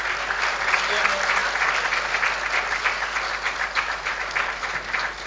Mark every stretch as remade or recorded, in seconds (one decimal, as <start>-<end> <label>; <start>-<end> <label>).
0.0-5.3 recorded